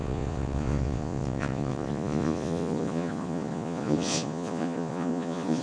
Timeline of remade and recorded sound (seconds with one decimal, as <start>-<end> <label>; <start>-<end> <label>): 0.0-5.6 remade